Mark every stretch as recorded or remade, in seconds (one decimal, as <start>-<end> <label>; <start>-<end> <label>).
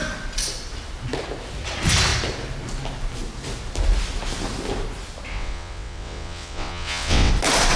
0.0-5.3 recorded; 5.3-7.3 remade; 7.3-7.8 recorded